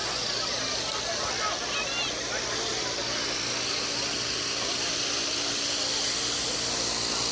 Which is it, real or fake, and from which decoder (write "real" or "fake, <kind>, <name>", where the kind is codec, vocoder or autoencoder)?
real